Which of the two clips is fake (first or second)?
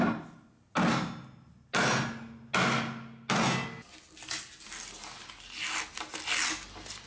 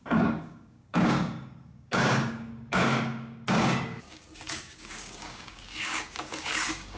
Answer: second